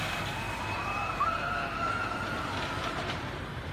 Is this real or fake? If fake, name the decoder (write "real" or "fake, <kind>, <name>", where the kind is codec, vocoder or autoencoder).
real